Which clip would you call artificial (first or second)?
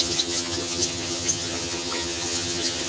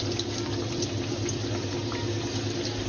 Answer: first